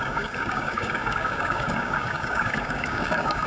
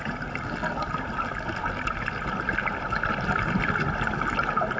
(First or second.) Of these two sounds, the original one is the second